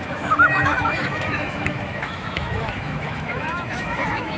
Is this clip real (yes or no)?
no